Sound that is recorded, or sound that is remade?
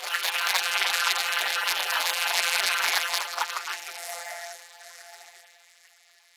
remade